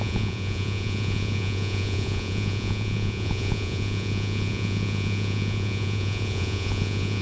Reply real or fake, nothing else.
fake